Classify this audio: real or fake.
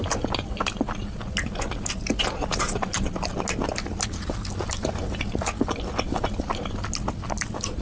real